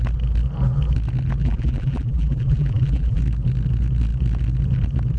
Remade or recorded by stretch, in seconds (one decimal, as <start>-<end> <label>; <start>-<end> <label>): 0.0-1.4 recorded; 1.4-3.2 remade; 3.2-5.2 recorded

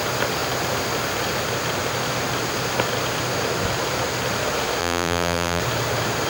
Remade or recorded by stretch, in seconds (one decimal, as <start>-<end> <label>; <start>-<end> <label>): 0.0-4.8 recorded; 4.8-5.6 remade; 5.6-6.3 recorded

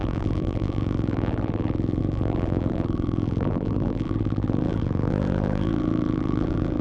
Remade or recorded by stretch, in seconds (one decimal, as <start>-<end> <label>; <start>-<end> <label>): 0.0-6.8 remade